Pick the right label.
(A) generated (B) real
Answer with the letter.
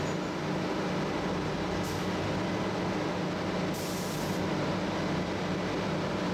B